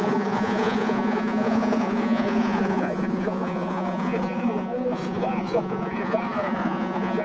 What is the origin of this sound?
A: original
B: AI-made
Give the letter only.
B